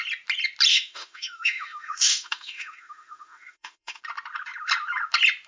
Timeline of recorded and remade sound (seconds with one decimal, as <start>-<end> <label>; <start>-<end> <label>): 0.0-0.7 recorded; 0.7-4.0 remade; 4.0-5.5 recorded